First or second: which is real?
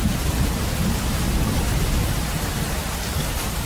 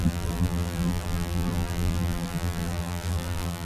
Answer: first